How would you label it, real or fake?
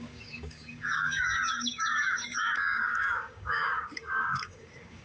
fake